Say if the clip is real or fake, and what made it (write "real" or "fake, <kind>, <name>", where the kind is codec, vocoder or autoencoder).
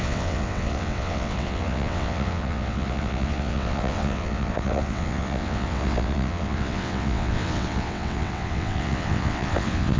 fake, vocoder, WaveNeXt